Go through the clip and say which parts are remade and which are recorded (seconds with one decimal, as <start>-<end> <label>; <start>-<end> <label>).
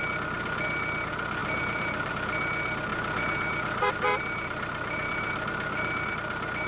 0.0-1.4 recorded; 1.4-2.1 remade; 2.1-2.9 recorded; 2.9-6.1 remade; 6.1-6.7 recorded